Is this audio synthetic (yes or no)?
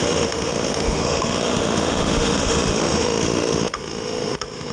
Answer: yes